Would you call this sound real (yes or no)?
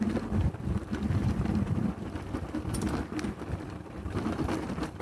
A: no